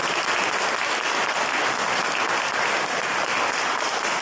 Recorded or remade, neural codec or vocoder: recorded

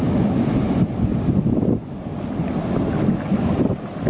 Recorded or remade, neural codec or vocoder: recorded